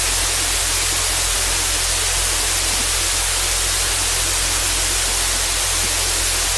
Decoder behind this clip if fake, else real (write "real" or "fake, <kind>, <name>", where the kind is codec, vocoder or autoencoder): real